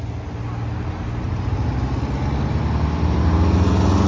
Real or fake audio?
real